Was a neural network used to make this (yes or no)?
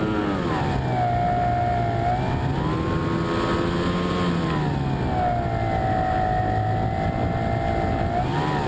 no